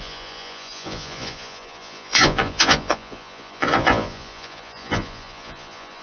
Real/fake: fake